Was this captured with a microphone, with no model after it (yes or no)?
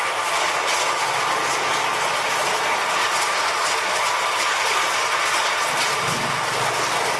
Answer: yes